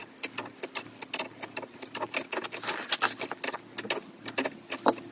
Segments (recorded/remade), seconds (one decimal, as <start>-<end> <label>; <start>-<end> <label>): 0.0-5.1 recorded